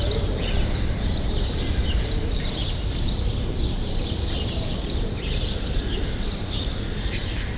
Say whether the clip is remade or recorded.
remade